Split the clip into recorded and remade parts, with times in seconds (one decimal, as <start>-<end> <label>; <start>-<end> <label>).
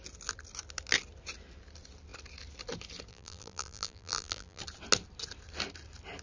0.0-3.1 recorded; 3.1-4.6 remade; 4.6-6.2 recorded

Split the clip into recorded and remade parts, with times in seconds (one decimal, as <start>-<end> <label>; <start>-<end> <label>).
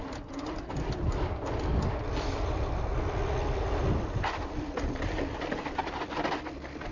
0.0-6.9 recorded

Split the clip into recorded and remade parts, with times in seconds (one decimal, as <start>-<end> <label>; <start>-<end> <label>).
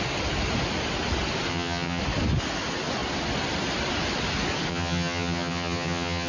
0.0-1.5 recorded; 1.5-2.0 remade; 2.0-4.7 recorded; 4.7-6.3 remade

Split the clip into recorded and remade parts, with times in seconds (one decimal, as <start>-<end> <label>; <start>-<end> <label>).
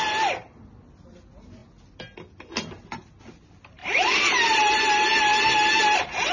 0.0-3.8 recorded; 3.8-4.7 remade; 4.7-6.3 recorded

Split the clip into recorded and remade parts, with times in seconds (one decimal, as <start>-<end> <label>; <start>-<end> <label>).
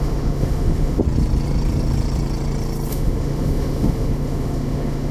0.0-1.0 remade; 1.0-2.9 recorded; 2.9-5.1 remade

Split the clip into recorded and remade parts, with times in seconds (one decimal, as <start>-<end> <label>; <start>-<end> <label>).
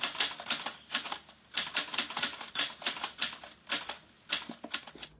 0.0-5.2 recorded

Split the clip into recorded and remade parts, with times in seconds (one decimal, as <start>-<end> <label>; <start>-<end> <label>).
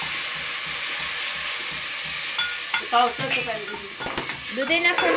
0.0-5.2 recorded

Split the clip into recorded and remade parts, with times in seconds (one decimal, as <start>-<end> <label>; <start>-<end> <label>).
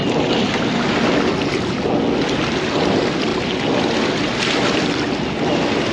0.0-5.9 recorded